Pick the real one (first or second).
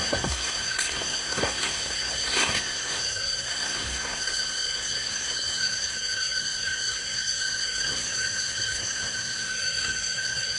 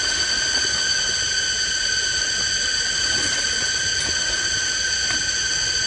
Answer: second